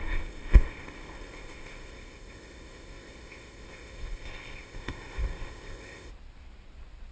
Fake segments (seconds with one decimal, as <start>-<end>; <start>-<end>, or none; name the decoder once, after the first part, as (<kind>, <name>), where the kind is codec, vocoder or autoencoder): 0.0-6.1 (codec, ZipCodec)